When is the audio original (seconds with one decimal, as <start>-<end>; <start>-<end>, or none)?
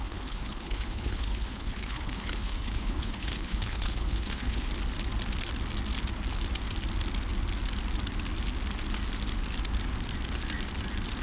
4.7-11.2